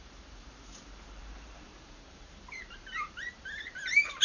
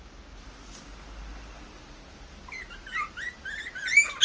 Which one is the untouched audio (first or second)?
second